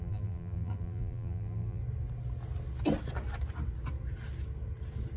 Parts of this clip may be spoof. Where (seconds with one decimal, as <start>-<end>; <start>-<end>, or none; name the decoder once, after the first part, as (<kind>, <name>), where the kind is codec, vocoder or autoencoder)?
0.0-1.8 (vocoder, BigVGAN v2)